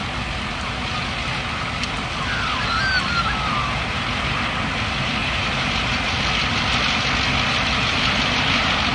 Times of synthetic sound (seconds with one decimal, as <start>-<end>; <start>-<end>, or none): 5.2-6.3; 7.5-8.4

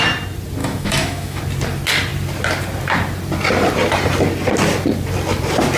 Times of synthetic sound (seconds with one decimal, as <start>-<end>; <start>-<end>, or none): 0.6-1.4